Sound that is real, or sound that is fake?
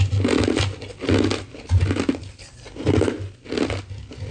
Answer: real